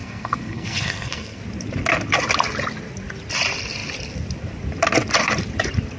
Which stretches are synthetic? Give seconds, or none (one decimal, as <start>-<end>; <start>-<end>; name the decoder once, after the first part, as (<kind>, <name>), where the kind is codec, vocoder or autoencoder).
0.0-1.4 (codec, SNAC)